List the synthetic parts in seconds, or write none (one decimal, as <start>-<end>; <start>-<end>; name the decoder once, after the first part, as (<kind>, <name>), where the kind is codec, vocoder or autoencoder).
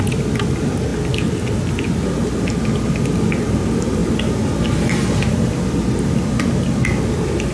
none